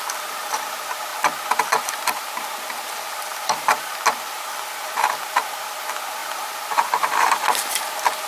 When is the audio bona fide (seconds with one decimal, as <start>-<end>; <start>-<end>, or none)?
0.0-3.3; 4.0-6.2; 7.8-8.3